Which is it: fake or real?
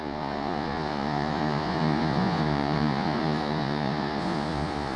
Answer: fake